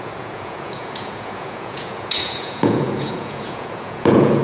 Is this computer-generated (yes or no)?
yes